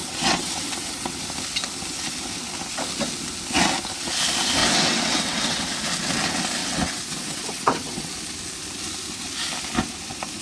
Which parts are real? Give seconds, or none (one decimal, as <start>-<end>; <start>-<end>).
1.2-4.6; 5.7-6.6; 8.1-10.4